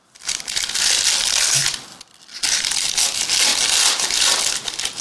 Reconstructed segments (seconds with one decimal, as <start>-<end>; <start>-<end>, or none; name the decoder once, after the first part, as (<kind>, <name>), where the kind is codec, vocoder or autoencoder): none